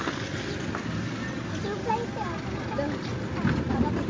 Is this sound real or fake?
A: real